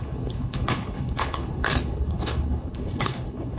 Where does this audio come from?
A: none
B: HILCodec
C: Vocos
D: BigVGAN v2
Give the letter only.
B